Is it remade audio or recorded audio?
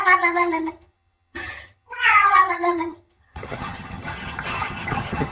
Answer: remade